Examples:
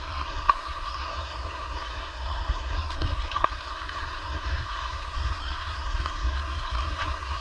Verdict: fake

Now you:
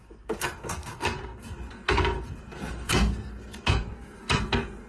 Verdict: fake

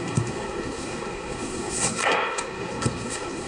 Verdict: fake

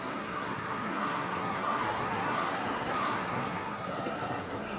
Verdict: fake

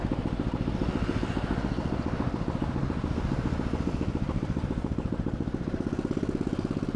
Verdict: real